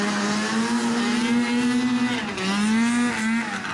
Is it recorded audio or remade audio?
recorded